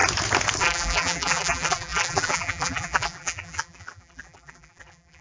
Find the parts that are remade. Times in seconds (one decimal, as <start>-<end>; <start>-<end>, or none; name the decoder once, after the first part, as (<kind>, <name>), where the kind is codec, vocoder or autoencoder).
0.6-5.2 (vocoder, BigVGAN v2)